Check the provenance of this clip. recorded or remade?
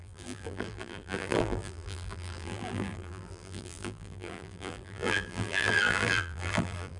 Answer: remade